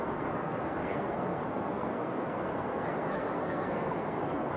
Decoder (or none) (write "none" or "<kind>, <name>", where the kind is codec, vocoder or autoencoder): codec, SNAC